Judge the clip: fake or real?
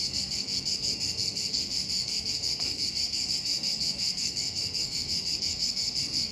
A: fake